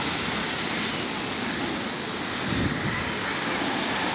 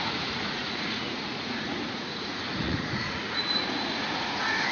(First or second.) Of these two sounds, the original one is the first